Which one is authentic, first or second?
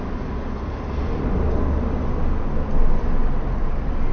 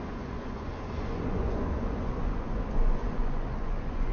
first